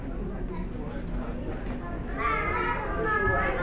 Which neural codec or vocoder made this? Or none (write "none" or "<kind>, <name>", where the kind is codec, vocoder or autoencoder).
none